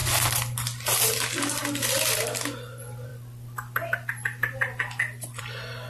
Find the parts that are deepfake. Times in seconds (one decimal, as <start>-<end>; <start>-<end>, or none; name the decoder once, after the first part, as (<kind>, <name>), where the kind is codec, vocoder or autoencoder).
none